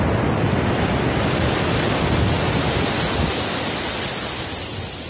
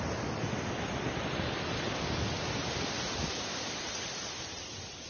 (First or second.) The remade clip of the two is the second